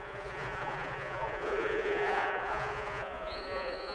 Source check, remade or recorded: remade